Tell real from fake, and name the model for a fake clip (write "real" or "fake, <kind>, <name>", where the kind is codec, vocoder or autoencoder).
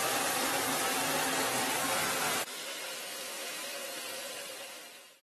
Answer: real